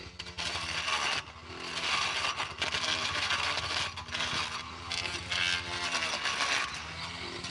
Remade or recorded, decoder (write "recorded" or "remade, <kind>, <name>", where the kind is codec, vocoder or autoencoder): recorded